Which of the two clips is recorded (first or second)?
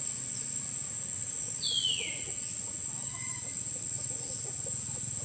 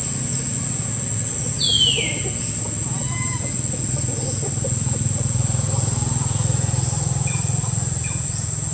second